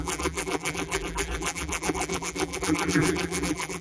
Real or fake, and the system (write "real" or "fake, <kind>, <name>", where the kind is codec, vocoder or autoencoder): fake, vocoder, BigVGAN v2